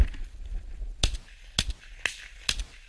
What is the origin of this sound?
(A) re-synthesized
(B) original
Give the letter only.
B